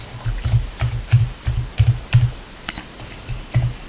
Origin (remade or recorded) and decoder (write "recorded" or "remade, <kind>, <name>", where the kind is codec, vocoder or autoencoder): recorded